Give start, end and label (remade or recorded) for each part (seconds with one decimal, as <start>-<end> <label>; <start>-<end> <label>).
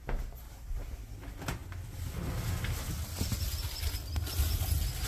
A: 0.0-5.1 recorded